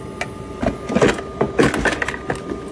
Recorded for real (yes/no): yes